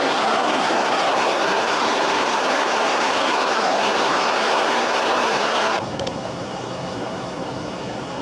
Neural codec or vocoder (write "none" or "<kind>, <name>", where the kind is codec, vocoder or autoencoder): codec, SNAC